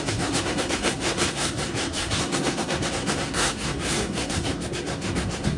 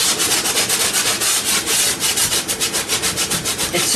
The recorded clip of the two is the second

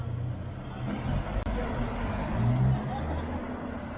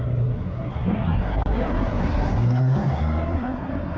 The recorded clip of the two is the first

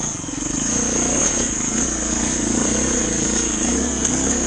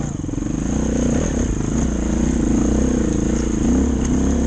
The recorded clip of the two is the second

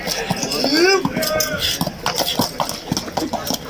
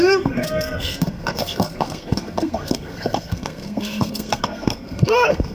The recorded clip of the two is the first